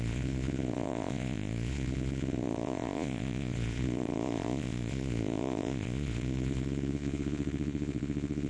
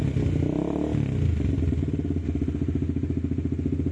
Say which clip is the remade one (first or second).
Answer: first